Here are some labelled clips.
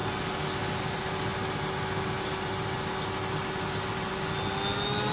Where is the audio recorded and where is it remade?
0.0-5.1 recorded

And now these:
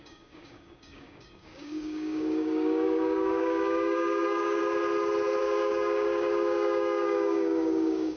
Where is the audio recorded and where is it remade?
0.0-4.6 remade; 4.6-5.4 recorded; 5.4-8.2 remade

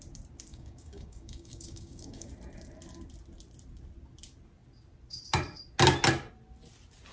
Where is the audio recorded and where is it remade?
0.0-0.5 recorded; 0.5-2.3 remade; 2.3-7.1 recorded

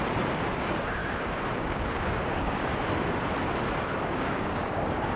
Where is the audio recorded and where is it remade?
0.0-0.6 recorded; 0.6-1.0 remade; 1.0-1.6 recorded; 1.6-2.7 remade; 2.7-4.0 recorded; 4.0-5.2 remade

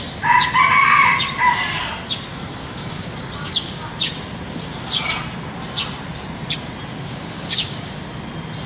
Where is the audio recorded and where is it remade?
0.0-2.6 recorded; 2.6-3.9 remade; 3.9-6.9 recorded; 6.9-7.9 remade; 7.9-8.7 recorded

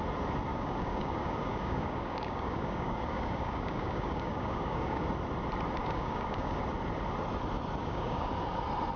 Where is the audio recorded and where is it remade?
0.0-0.5 recorded; 0.5-5.1 remade; 5.1-5.8 recorded; 5.8-6.6 remade; 6.6-7.8 recorded; 7.8-8.3 remade; 8.3-9.0 recorded

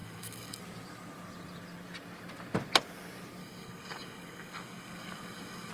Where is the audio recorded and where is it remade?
0.0-0.6 remade; 0.6-3.4 recorded; 3.4-5.7 remade

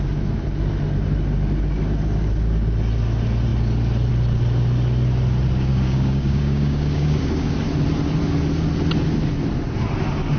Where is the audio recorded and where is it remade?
0.0-5.7 recorded; 5.7-7.5 remade; 7.5-10.4 recorded